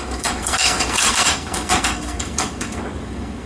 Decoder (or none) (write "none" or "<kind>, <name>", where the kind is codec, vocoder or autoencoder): codec, SNAC